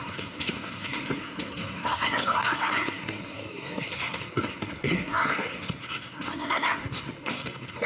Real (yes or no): no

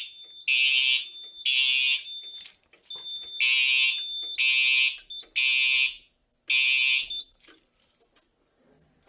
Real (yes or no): yes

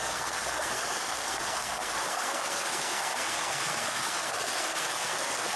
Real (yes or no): no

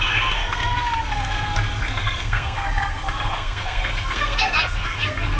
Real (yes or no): no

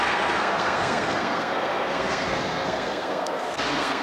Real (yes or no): no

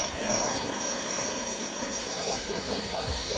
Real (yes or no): no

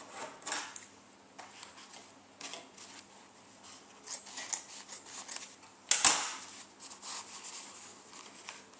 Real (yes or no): yes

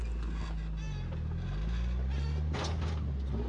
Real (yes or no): yes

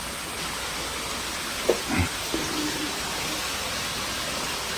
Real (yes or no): yes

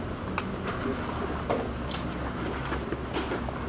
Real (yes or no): yes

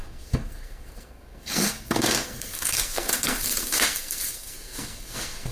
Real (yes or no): no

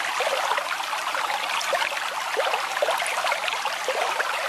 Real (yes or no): yes